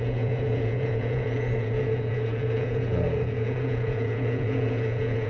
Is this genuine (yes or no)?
no